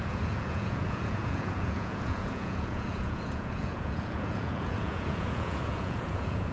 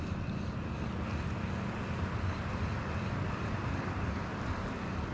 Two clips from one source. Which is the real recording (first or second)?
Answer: second